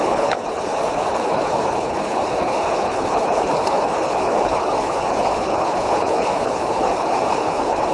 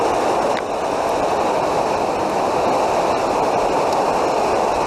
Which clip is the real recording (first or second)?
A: second